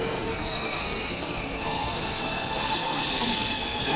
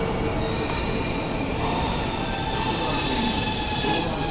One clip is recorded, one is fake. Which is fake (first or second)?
first